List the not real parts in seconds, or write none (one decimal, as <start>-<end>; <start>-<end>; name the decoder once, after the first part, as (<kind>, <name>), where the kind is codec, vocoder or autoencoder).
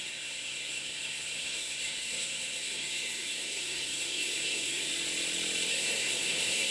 0.0-4.9 (codec, SNAC); 5.7-6.7